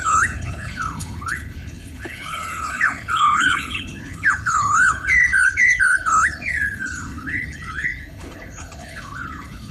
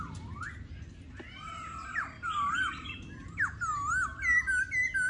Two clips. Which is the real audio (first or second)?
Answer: second